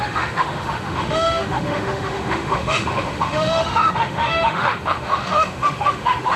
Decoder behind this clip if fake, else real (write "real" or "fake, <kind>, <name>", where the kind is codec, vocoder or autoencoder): fake, autoencoder, DAC-VAE